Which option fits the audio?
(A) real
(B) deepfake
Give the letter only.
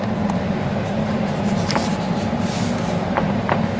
B